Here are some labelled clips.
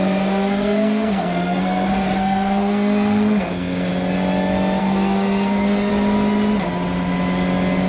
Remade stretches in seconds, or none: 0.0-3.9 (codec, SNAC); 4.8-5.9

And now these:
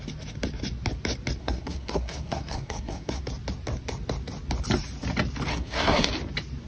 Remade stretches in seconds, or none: 1.4-3.2 (codec, SNAC); 5.5-6.1

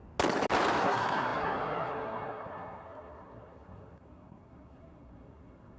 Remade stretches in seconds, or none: 0.8-5.8 (codec, SNAC)

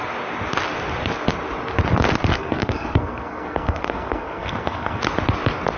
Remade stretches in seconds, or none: 2.3-5.0 (codec, SNAC)

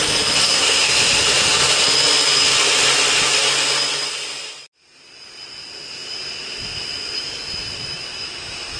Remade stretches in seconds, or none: 0.4-0.9 (codec, SNAC)

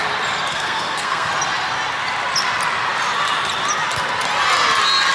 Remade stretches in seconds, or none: 0.5-1.3 (codec, SNAC)